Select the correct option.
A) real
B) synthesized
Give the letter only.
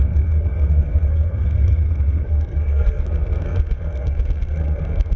B